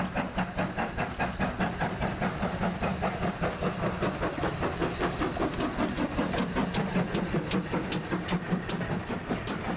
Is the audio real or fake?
real